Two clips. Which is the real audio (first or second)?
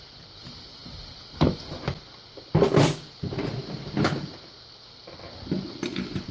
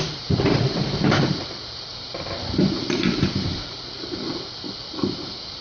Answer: first